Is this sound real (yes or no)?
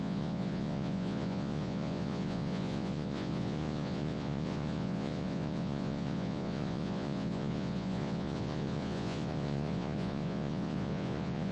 no